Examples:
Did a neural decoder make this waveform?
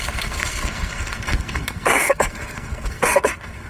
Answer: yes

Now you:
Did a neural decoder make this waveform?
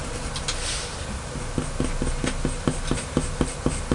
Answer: no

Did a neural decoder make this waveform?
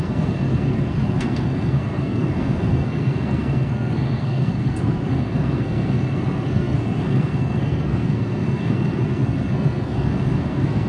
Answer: yes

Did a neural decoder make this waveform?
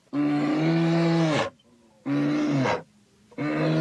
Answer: no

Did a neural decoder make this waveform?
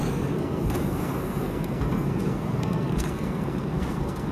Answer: yes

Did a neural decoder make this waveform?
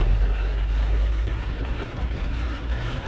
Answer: yes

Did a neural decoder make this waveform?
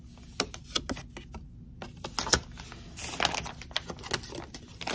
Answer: no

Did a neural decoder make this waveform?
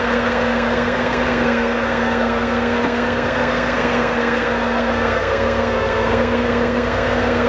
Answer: yes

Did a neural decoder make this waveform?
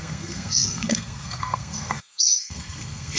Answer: yes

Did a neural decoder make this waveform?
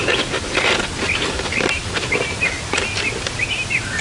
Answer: no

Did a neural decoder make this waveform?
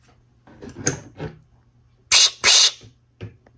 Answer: no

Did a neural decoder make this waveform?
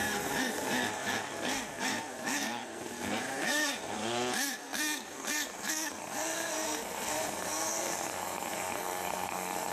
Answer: yes